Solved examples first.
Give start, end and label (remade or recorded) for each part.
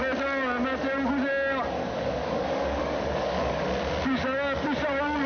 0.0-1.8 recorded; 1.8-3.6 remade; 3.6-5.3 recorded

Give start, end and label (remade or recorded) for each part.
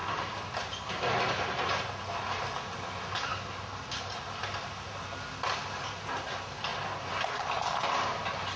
0.0-8.6 recorded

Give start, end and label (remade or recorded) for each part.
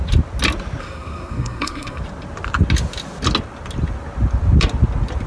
0.0-0.8 recorded; 0.8-2.0 remade; 2.0-5.3 recorded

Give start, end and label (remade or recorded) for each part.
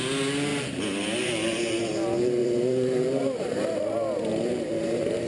0.0-2.4 recorded; 2.4-3.8 remade; 3.8-4.3 recorded; 4.3-5.3 remade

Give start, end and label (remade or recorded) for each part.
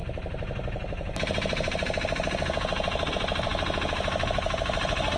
0.0-5.2 recorded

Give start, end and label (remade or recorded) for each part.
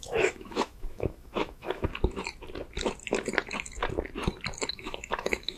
0.0-1.9 remade; 1.9-4.7 recorded; 4.7-5.6 remade